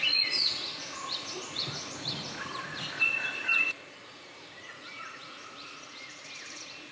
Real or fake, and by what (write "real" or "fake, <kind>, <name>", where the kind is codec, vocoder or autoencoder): fake, vocoder, Vocos